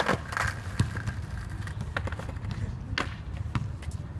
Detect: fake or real real